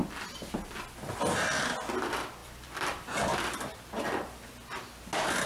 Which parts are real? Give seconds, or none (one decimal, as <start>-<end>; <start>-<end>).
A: 0.0-2.4; 4.5-5.5